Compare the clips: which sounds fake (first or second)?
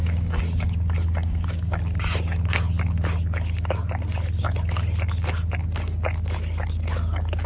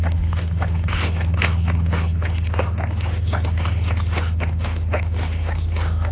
second